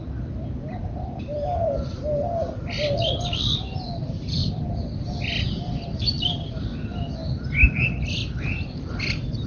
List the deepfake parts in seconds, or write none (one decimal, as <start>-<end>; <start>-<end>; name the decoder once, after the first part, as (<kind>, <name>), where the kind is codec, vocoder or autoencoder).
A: none